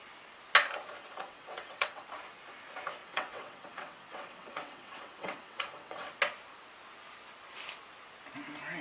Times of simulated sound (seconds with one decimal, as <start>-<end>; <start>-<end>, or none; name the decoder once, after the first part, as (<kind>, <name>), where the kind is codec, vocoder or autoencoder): 1.0-2.1 (vocoder, WaveNeXt); 3.0-6.1